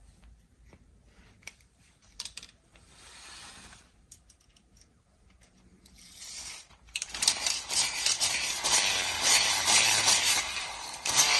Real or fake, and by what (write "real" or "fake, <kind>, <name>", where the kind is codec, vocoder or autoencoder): fake, vocoder, BigVGAN v2